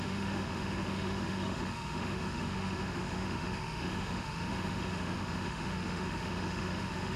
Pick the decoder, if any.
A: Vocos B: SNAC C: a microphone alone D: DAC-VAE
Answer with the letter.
D